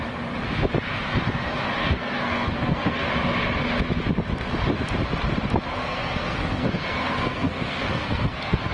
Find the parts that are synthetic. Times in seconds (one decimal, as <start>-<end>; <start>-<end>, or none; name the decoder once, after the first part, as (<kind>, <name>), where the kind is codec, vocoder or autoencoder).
1.8-3.1 (codec, SNAC); 5.8-8.7